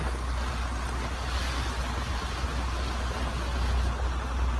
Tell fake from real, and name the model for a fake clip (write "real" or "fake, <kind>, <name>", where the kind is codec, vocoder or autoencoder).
real